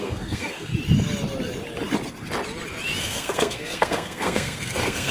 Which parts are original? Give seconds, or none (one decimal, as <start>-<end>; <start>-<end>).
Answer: 0.7-3.0